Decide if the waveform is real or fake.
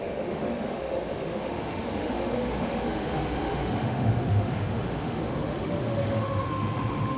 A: fake